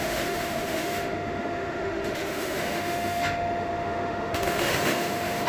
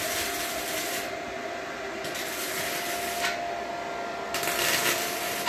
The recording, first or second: second